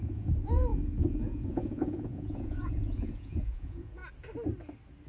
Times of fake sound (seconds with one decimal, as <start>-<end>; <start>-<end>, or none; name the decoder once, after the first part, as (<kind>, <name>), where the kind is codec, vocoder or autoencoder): 0.0-4.0 (vocoder, Vocos)